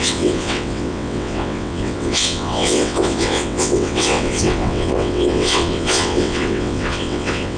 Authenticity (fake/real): fake